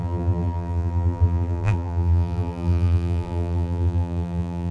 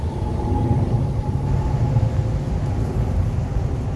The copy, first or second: first